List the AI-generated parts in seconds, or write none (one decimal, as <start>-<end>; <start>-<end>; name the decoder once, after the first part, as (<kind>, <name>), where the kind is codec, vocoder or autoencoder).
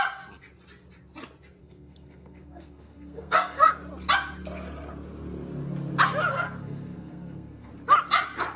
1.6-3.7 (codec, SNAC); 6.3-7.7